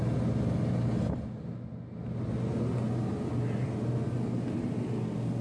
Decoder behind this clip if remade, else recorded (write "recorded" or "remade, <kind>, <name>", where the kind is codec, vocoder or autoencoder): recorded